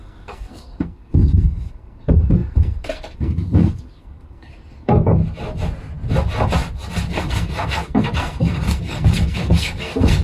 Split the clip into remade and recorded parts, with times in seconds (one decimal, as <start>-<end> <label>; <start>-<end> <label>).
0.0-5.2 remade; 5.2-7.1 recorded; 7.1-10.2 remade